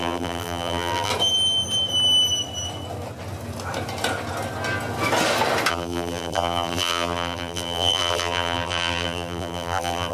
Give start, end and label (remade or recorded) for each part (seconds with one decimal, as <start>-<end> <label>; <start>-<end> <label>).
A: 0.0-1.1 remade; 1.1-5.7 recorded; 5.7-10.1 remade